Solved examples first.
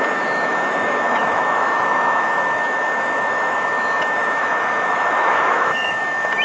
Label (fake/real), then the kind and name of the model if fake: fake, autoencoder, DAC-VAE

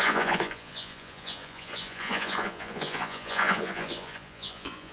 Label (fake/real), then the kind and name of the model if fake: fake, vocoder, Vocos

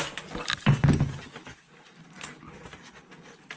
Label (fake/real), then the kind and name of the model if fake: real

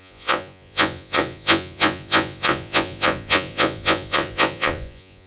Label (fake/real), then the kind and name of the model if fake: fake, vocoder, Vocos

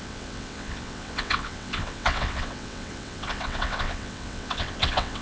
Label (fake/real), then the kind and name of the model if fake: fake, vocoder, WaveNeXt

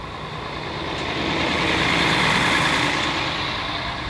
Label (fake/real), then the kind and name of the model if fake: real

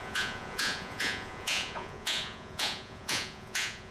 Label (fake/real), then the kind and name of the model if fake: fake, vocoder, Vocos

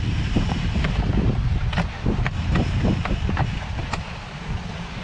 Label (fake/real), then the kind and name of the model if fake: fake, vocoder, BigVGAN v2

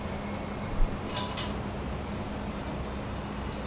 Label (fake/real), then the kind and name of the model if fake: real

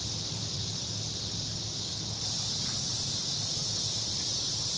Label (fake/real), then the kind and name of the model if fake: real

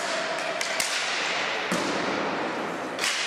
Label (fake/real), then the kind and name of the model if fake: real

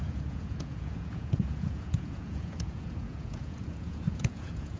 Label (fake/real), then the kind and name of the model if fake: fake, vocoder, Vocos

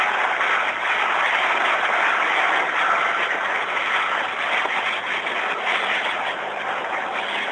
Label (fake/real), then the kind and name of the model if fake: real